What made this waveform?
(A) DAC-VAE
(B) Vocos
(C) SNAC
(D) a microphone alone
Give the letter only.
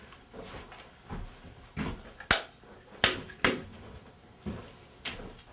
D